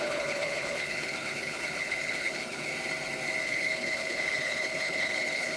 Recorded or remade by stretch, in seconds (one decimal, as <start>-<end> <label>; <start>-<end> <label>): 0.0-2.7 remade; 2.7-3.4 recorded; 3.4-5.6 remade